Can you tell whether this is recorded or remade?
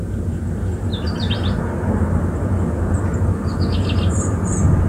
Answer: recorded